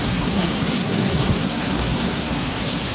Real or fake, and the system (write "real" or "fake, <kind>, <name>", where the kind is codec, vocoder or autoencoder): fake, codec, SNAC